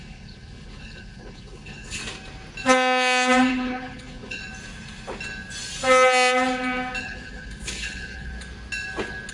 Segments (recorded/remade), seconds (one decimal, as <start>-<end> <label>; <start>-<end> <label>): 0.0-2.0 remade; 2.0-3.5 recorded; 3.5-4.4 remade; 4.4-7.0 recorded; 7.0-8.3 remade; 8.3-9.3 recorded